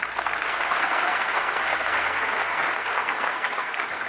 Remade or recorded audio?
remade